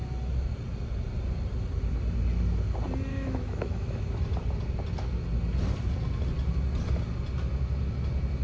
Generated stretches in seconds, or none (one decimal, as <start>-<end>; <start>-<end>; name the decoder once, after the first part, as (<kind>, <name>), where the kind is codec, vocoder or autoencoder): 3.1-4.0 (autoencoder, DAC-VAE)